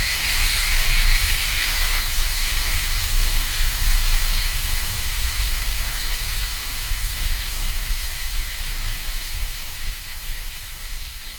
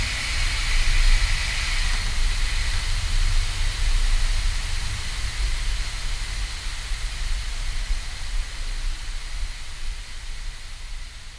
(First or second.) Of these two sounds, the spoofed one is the first